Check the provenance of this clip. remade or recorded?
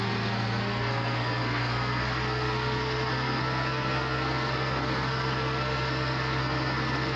remade